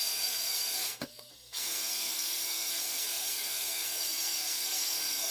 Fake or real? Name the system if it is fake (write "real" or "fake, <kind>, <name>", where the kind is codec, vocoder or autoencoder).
fake, codec, SNAC